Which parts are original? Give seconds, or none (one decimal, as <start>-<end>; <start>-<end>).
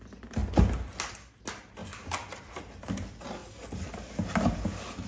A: 0.0-1.8; 2.6-5.1